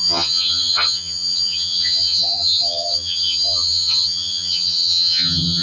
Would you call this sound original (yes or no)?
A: no